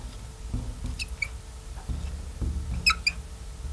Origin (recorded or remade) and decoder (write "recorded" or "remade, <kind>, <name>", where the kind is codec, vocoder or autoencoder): recorded